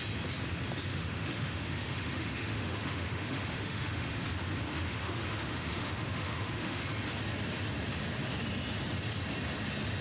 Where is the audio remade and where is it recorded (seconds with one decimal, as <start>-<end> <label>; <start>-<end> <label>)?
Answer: 0.0-0.9 recorded; 0.9-4.2 remade; 4.2-4.7 recorded; 4.7-6.9 remade; 6.9-10.0 recorded